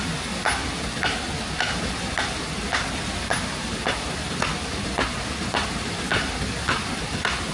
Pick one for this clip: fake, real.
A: real